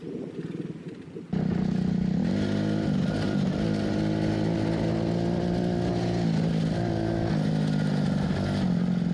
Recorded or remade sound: recorded